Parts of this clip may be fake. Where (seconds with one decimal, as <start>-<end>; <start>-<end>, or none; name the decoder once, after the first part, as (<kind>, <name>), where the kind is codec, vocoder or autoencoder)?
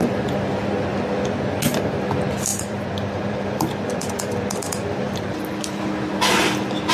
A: 2.5-5.8 (vocoder, BigVGAN v2)